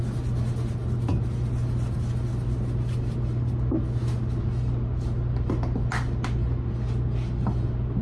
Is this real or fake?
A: real